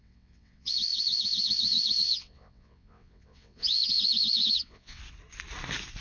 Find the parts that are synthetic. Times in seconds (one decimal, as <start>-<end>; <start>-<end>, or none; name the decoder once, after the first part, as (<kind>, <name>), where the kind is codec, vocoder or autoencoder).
0.0-5.0 (vocoder, WaveNeXt)